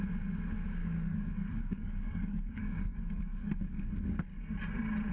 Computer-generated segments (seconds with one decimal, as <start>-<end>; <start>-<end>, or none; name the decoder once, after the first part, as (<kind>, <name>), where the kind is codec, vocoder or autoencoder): 0.8-3.9 (codec, DAC)